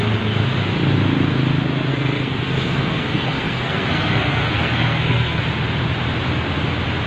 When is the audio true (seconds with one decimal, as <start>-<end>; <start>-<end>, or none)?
0.0-1.9; 5.4-7.1